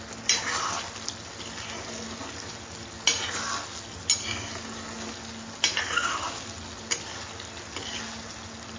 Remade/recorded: recorded